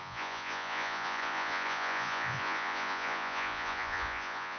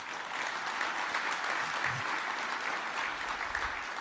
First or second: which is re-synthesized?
first